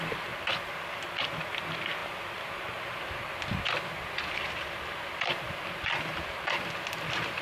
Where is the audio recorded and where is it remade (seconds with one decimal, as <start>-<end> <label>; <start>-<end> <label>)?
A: 0.0-7.4 recorded